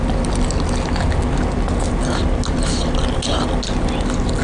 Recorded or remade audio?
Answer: recorded